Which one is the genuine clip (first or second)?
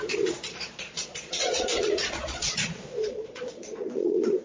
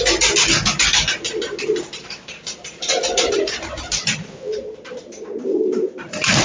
second